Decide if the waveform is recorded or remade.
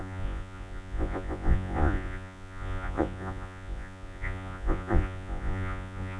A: remade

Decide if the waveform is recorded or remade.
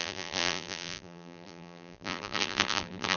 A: remade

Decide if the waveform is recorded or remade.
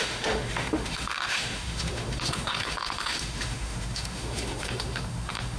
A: remade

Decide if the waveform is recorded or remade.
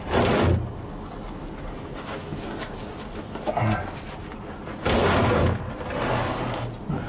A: recorded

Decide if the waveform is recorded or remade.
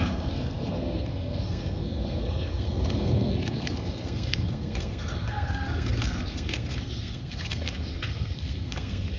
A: remade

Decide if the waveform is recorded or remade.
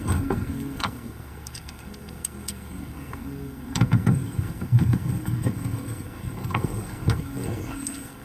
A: remade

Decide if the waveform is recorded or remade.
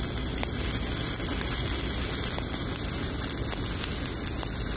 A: recorded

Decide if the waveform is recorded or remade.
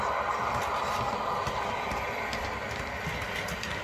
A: recorded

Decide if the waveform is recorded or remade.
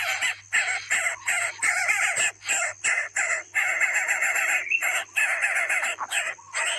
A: recorded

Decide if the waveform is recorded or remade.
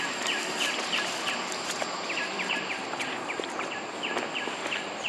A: recorded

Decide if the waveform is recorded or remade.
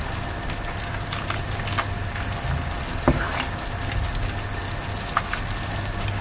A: recorded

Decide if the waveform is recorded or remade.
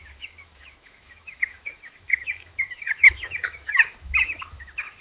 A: remade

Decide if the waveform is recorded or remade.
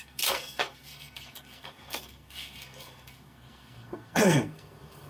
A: remade